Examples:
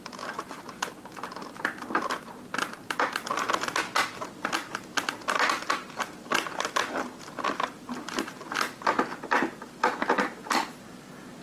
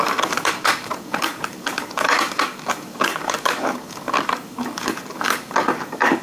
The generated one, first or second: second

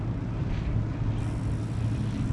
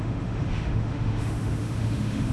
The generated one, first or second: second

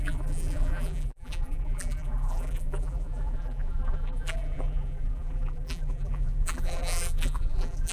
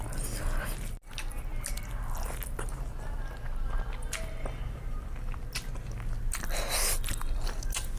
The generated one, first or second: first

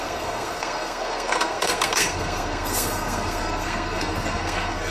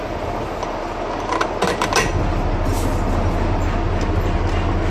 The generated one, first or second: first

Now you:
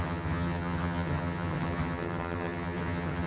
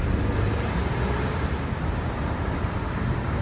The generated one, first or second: first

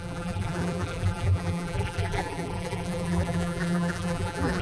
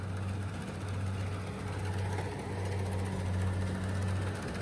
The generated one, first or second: first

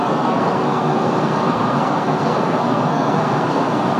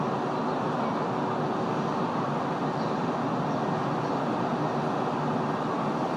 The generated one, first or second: first